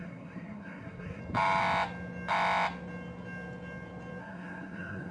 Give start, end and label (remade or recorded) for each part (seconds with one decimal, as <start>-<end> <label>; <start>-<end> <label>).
0.0-1.2 remade; 1.2-4.2 recorded; 4.2-5.1 remade